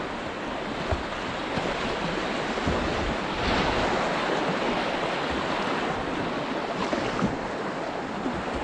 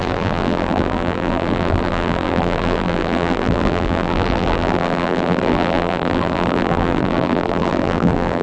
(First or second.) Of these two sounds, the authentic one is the first